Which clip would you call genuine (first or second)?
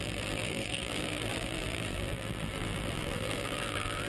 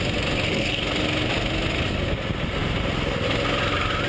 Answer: second